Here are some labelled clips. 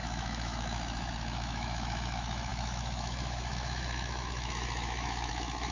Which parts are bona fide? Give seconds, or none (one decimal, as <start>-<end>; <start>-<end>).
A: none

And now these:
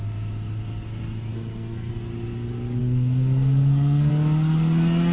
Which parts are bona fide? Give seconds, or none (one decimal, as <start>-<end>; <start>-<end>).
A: 0.0-1.3; 1.9-2.8; 4.1-5.1

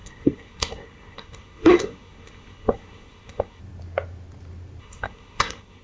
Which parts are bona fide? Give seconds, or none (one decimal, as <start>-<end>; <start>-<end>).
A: 3.6-4.8

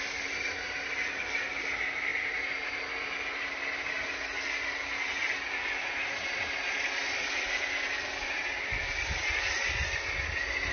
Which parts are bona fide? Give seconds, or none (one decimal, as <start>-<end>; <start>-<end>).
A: 0.0-2.1; 2.8-10.7

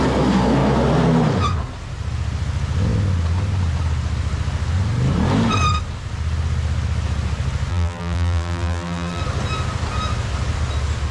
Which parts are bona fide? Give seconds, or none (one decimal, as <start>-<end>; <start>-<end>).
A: 0.0-7.7; 9.2-11.1

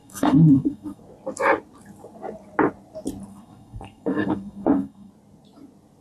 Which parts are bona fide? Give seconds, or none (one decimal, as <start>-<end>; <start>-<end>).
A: 1.0-3.3; 5.1-6.0

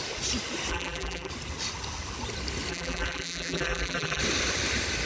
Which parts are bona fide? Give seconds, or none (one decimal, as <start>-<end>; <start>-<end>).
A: 0.0-0.7; 1.3-2.7; 4.2-5.1